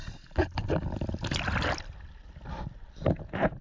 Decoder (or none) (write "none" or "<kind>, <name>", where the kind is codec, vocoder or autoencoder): none